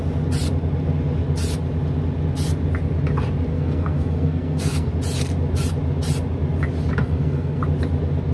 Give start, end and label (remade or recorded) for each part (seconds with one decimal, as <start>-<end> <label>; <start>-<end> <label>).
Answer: 0.0-3.5 recorded; 3.5-4.9 remade; 4.9-7.0 recorded; 7.0-7.6 remade; 7.6-8.3 recorded